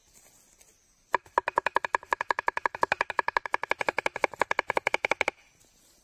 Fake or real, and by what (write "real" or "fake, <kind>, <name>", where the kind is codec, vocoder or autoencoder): real